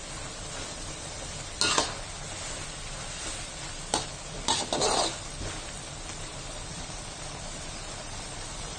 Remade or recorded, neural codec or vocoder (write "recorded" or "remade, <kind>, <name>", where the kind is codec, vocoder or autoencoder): recorded